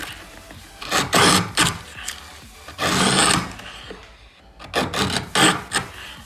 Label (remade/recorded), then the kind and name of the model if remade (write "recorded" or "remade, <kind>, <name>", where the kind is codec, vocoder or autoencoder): recorded